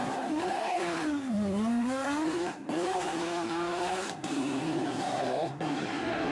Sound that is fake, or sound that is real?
fake